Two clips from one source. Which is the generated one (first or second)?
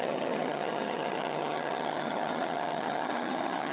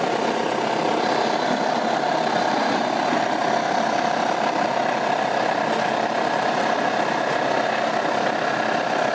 first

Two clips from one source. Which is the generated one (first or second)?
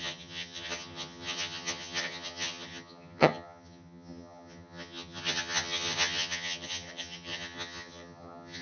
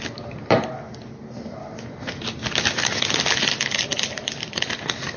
first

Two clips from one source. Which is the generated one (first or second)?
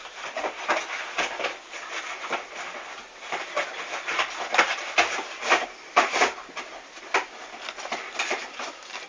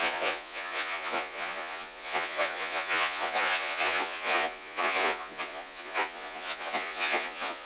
second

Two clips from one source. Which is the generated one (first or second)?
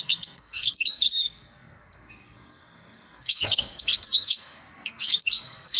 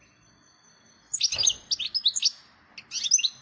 first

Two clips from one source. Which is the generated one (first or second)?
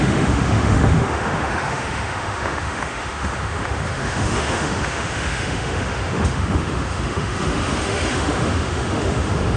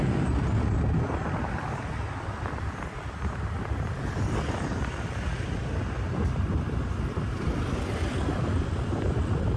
first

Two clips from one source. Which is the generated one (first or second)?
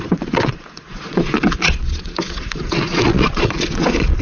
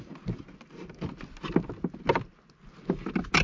first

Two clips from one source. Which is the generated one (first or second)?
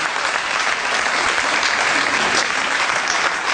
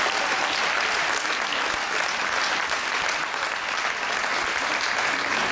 first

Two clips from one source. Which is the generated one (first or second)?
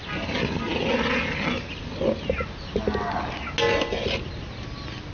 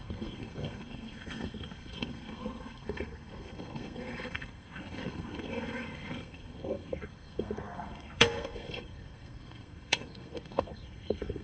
second